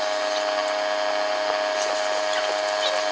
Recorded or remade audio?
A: recorded